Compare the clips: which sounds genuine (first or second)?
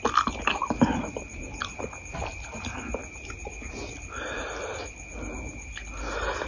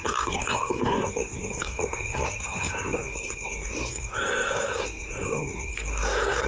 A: first